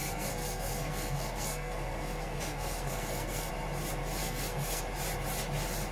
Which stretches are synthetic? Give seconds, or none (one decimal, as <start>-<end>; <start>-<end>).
0.0-3.5; 4.2-4.8